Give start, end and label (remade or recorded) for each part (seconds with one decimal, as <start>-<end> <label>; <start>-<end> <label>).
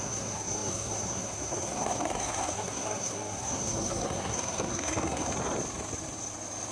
0.0-5.3 remade; 5.3-6.7 recorded